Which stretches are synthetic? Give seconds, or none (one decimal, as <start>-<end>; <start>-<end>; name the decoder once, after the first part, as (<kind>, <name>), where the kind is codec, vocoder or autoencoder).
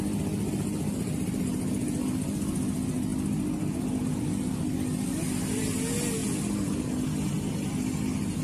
none